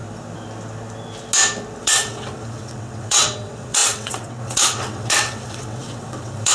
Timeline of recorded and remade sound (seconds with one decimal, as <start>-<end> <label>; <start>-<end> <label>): 0.0-1.8 recorded; 1.8-6.5 remade